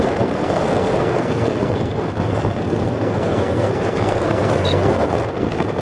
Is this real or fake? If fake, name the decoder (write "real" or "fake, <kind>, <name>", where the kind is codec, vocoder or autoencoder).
fake, codec, SNAC